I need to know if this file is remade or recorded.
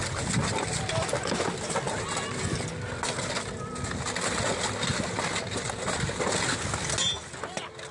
recorded